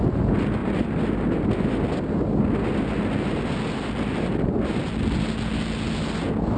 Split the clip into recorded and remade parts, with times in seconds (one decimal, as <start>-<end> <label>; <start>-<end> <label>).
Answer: 0.0-6.6 recorded